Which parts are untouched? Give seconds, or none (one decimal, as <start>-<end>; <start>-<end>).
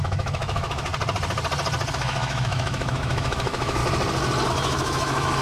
0.9-1.9; 3.8-4.5